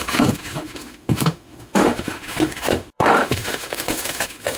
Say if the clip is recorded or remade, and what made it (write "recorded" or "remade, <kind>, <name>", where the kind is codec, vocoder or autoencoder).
remade, autoencoder, DAC-VAE